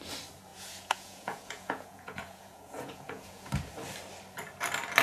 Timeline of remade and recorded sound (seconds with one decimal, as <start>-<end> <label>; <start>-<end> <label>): 0.0-0.5 recorded; 0.5-3.5 remade; 3.5-5.0 recorded